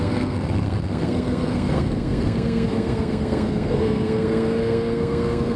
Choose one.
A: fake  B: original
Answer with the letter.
A